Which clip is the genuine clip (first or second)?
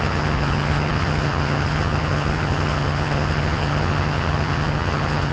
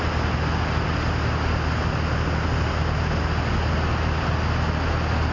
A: second